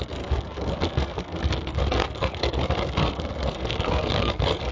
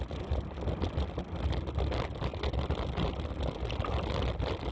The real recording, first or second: second